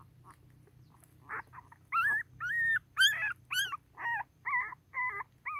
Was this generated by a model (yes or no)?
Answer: no